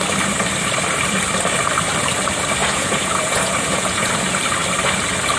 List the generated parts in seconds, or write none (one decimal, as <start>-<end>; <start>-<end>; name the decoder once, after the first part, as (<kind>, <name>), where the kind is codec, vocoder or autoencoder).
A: 2.6-4.1 (vocoder, Vocos)